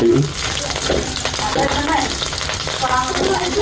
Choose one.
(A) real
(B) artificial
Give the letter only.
A